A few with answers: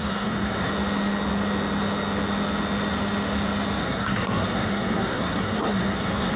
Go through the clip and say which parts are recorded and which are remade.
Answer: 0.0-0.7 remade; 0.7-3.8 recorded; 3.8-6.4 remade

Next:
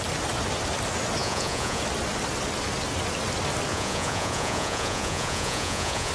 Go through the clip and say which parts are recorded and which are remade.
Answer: 0.0-1.2 recorded; 1.2-1.8 remade; 1.8-3.7 recorded; 3.7-6.1 remade